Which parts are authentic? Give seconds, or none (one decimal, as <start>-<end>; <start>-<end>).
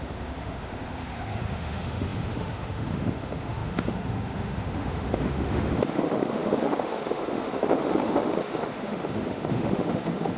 none